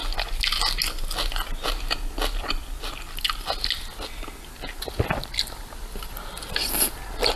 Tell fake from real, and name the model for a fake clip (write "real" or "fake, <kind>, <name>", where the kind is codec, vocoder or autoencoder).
real